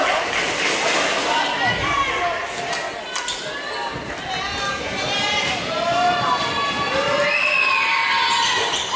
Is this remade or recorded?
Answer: recorded